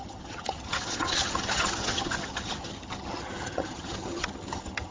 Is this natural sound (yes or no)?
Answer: no